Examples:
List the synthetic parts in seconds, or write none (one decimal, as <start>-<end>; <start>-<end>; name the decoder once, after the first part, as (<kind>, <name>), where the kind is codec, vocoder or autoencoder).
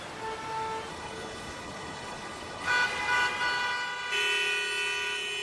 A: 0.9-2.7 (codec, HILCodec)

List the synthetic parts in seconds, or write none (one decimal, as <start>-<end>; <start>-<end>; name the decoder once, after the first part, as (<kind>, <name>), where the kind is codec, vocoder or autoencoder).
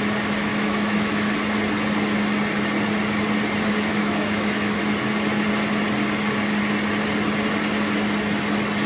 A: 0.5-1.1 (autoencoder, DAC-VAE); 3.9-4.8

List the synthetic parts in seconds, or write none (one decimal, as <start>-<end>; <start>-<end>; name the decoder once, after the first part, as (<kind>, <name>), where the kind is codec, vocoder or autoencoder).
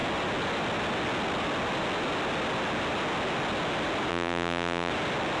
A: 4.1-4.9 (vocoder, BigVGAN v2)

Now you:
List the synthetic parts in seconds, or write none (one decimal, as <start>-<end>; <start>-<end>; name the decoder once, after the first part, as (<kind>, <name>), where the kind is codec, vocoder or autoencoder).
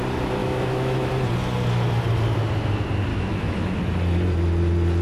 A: 0.4-1.1 (autoencoder, DAC-VAE); 3.1-3.8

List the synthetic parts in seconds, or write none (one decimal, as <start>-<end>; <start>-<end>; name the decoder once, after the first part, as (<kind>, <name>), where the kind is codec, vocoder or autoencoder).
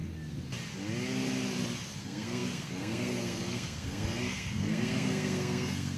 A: 2.0-6.0 (codec, SNAC)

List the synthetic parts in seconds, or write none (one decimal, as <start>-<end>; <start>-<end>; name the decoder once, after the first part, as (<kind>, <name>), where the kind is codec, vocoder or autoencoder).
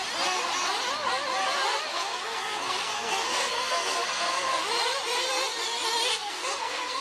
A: 1.9-4.6 (codec, SNAC); 6.1-7.0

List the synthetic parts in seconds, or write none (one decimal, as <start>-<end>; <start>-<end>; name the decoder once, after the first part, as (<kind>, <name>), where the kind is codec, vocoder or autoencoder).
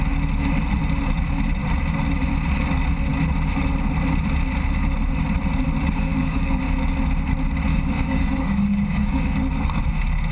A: 6.1-6.6 (codec, DAC); 7.7-9.8